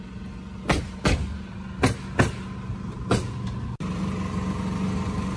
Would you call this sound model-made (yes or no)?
no